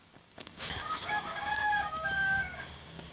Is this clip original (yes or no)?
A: no